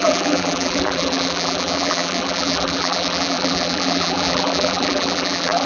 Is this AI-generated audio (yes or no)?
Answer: yes